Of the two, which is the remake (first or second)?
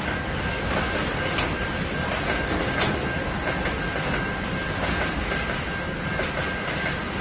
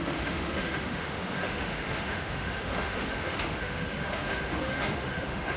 second